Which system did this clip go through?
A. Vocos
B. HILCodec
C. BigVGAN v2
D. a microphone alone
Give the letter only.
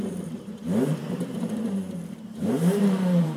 C